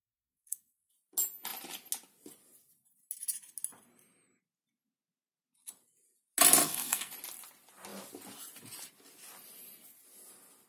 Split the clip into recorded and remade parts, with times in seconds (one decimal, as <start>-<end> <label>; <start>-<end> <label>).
0.0-0.9 remade; 0.9-6.6 recorded; 6.6-7.1 remade; 7.1-10.7 recorded